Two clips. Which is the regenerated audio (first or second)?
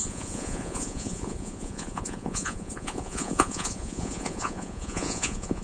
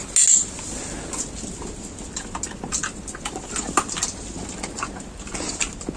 first